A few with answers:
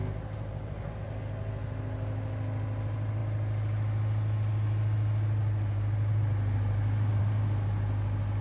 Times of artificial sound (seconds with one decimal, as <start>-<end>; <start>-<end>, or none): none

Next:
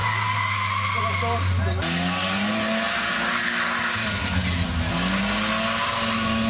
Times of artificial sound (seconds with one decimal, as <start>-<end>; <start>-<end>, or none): none

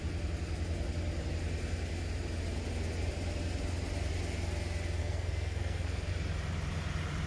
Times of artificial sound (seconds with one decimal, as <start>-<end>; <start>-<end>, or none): 5.0-6.1

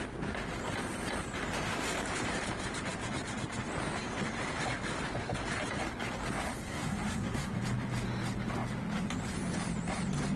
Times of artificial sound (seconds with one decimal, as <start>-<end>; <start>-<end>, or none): 6.6-7.6